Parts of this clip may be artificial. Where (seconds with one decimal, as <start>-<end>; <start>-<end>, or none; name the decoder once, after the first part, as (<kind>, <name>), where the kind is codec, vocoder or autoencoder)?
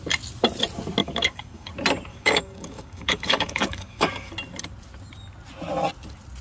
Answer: 1.0-1.7 (codec, DAC); 2.1-4.3